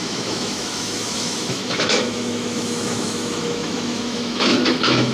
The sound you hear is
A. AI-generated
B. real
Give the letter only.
A